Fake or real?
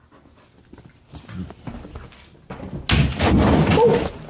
real